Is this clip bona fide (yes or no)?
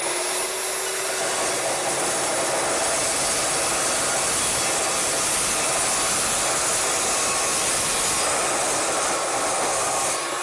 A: yes